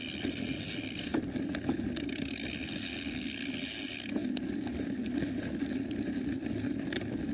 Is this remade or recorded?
recorded